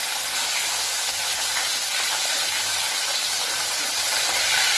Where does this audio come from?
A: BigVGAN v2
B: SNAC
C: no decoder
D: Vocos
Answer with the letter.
C